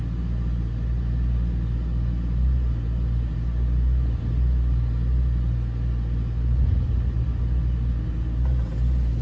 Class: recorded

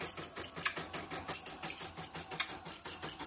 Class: recorded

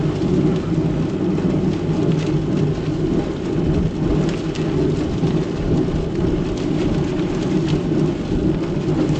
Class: recorded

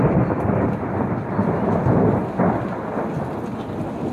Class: recorded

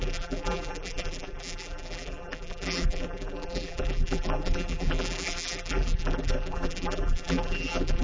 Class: remade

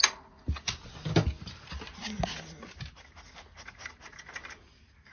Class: recorded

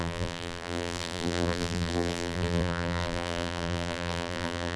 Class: remade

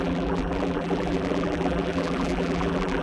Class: remade